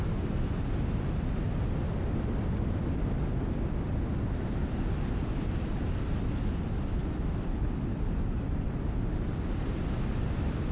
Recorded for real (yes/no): yes